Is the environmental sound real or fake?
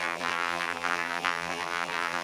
fake